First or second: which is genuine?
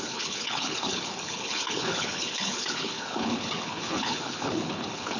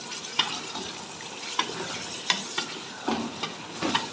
second